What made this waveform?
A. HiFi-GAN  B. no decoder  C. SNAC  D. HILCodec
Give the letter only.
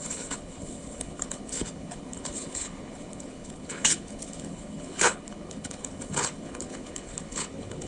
D